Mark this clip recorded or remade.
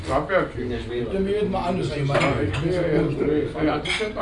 recorded